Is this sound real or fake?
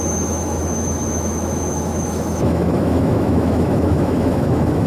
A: fake